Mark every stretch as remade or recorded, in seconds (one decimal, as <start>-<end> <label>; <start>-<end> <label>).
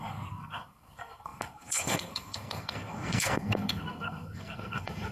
0.0-5.1 remade